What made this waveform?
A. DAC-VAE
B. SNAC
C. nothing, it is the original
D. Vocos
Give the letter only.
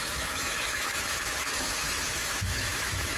A